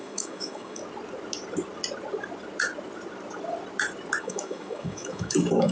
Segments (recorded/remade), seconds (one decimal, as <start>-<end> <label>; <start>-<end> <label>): 0.0-0.8 remade; 0.8-4.2 recorded; 4.2-5.7 remade